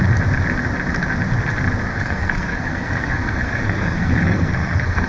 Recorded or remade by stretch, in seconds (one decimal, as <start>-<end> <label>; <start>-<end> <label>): 0.0-1.9 recorded; 1.9-5.1 remade